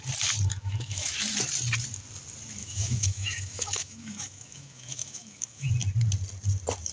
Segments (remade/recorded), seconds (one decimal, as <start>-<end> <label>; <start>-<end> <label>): 0.0-0.5 recorded; 0.5-1.1 remade; 1.1-2.6 recorded; 2.6-5.7 remade; 5.7-6.9 recorded